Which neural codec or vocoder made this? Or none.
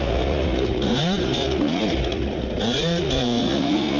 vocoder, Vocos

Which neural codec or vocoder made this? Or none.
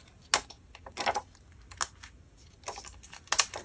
none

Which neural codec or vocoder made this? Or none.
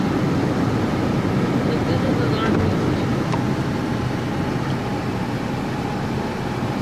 none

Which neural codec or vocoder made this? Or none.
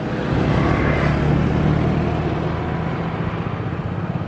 none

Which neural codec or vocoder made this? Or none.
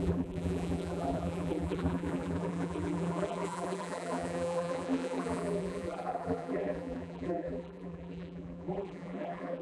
vocoder, BigVGAN v2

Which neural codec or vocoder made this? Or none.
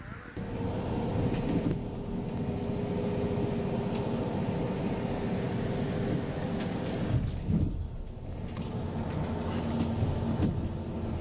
none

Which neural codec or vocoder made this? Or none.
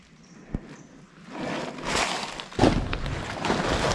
none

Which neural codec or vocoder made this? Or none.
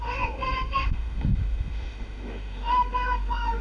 autoencoder, DAC-VAE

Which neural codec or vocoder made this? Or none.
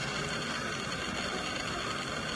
none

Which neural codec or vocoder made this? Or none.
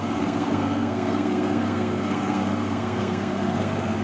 codec, SNAC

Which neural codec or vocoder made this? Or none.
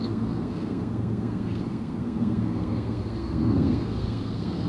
codec, SNAC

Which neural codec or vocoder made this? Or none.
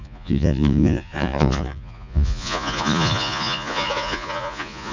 vocoder, Vocos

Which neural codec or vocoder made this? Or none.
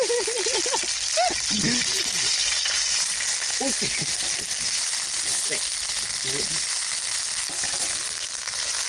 none